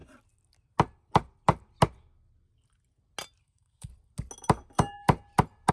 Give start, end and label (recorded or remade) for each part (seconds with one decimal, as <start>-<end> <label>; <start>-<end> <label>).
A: 0.0-3.4 recorded; 3.4-3.9 remade; 3.9-5.7 recorded